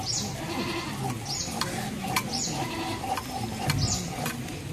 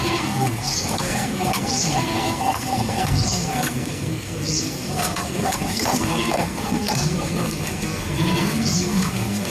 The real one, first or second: first